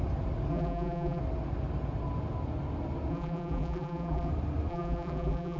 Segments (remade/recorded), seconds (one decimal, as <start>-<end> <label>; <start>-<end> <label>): 0.0-0.5 recorded; 0.5-1.2 remade; 1.2-3.1 recorded; 3.1-4.3 remade; 4.3-4.7 recorded; 4.7-5.6 remade